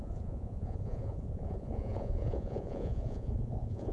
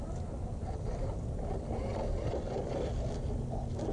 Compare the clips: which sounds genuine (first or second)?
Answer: second